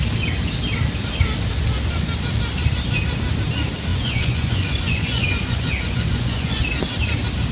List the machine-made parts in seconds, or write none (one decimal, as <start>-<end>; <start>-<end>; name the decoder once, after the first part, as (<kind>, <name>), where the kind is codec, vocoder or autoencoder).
3.9-6.6 (vocoder, Vocos)